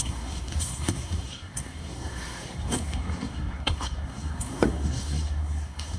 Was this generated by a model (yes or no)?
yes